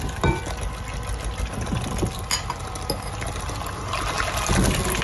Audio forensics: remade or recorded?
recorded